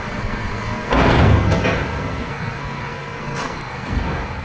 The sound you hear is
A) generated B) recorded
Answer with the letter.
A